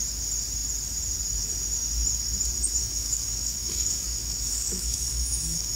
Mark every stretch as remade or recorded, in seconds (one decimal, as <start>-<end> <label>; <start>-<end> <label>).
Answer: 0.0-2.8 recorded; 2.8-5.8 remade